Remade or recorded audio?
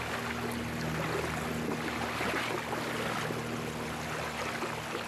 recorded